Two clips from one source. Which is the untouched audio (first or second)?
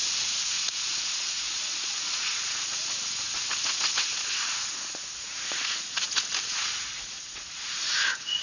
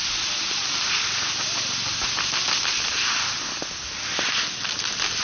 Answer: second